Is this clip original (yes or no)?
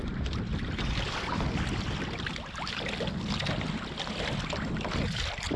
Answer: yes